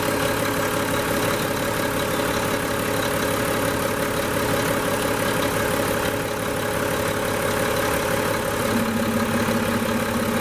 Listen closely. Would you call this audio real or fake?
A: real